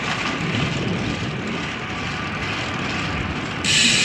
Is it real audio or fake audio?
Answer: real